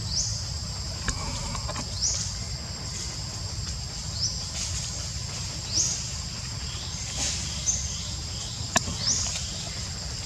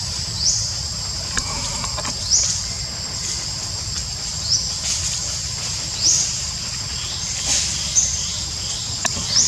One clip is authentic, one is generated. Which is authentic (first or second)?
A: first